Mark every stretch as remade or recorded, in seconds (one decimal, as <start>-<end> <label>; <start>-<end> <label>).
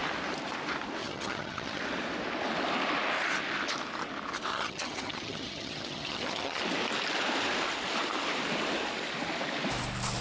0.0-1.0 recorded; 1.0-1.8 remade; 1.8-4.5 recorded; 4.5-6.6 remade; 6.6-10.2 recorded